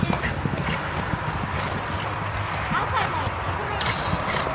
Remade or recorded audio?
recorded